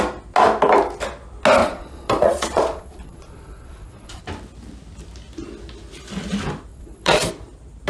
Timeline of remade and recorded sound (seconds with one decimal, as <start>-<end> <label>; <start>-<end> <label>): 0.0-1.6 recorded; 1.6-4.2 remade; 4.2-6.7 recorded; 6.7-7.3 remade; 7.3-7.9 recorded